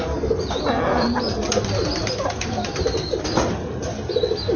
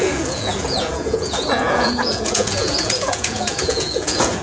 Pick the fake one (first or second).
second